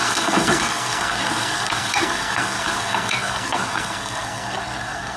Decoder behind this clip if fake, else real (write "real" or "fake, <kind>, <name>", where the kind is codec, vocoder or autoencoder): fake, codec, SNAC